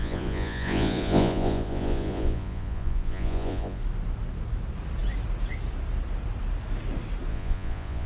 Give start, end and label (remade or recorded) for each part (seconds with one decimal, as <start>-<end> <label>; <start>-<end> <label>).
0.0-3.8 remade; 3.8-7.3 recorded; 7.3-8.1 remade